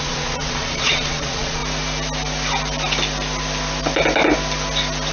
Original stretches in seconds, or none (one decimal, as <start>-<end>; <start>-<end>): 1.6-5.1